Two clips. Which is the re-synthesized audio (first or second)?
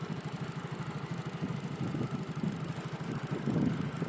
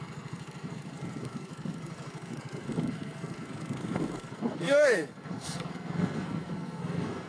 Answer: second